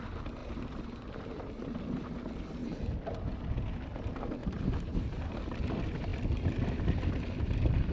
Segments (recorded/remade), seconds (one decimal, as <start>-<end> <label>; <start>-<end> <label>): 0.0-0.4 recorded; 0.4-2.1 remade; 2.1-4.4 recorded; 4.4-5.4 remade; 5.4-7.9 recorded